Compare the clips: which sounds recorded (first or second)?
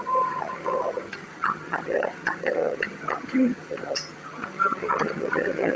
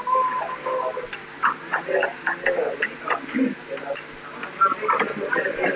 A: second